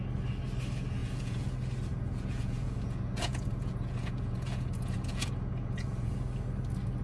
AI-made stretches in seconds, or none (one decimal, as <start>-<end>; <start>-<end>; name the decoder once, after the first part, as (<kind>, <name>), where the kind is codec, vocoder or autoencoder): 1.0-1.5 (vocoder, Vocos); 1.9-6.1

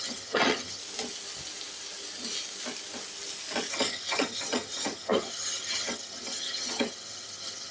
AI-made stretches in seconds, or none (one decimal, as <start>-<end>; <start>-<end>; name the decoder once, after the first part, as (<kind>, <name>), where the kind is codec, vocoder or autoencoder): 0.0-0.8 (vocoder, HiFi-GAN); 3.7-7.7

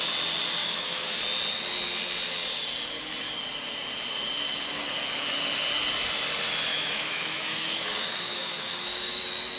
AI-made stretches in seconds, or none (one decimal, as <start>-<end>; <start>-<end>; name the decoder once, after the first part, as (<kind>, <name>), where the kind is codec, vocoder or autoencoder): 0.6-1.2 (autoencoder, DAC-VAE); 6.7-9.2

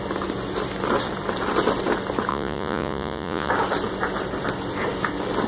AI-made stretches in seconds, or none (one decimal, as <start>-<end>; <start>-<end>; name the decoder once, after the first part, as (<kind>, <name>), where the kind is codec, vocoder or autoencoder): 2.3-3.5 (vocoder, Vocos)